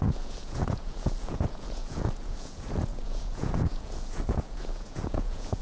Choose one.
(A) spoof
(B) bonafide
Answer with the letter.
A